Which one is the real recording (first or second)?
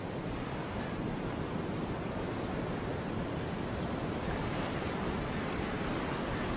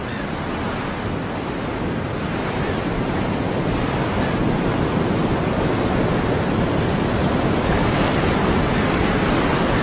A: second